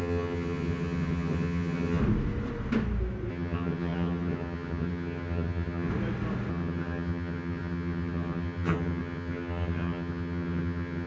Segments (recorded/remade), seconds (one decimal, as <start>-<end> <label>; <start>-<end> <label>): 0.0-2.0 remade; 2.0-3.3 recorded; 3.3-5.9 remade; 5.9-6.5 recorded; 6.5-11.1 remade